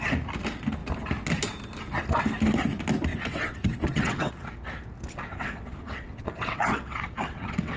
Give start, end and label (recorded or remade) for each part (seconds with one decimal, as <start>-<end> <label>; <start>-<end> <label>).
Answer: 0.0-3.1 recorded; 3.1-4.3 remade; 4.3-5.3 recorded; 5.3-7.8 remade